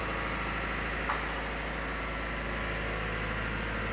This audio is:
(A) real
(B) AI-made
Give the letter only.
A